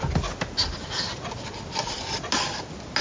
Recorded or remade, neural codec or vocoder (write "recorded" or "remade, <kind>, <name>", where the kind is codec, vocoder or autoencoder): recorded